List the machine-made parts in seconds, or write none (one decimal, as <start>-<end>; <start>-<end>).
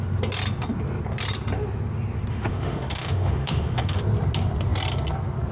2.3-4.0